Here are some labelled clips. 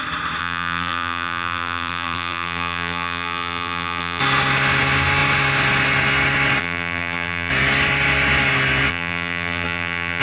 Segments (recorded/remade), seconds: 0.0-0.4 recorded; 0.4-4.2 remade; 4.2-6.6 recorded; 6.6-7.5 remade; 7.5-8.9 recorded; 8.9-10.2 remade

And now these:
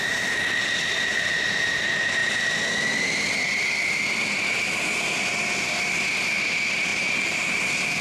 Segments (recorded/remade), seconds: 0.0-1.1 recorded; 1.1-1.7 remade; 1.7-6.9 recorded; 6.9-7.6 remade; 7.6-8.0 recorded